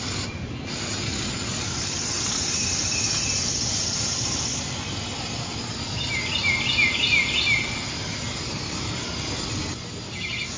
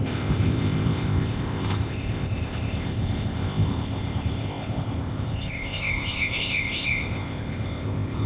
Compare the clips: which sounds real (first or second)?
first